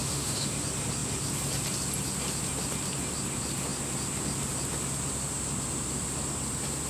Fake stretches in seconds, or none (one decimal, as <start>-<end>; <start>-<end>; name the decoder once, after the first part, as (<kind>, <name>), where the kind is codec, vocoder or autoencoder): 0.0-0.5 (autoencoder, DAC-VAE)